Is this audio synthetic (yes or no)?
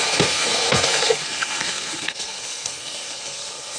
yes